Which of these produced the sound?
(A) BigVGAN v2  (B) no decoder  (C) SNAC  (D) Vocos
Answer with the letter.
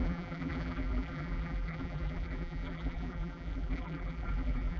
A